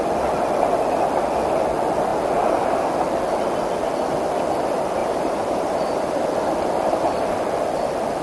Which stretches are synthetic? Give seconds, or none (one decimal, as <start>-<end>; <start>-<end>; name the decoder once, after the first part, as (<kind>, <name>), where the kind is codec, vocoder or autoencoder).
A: 5.0-6.2 (vocoder, BigVGAN v2)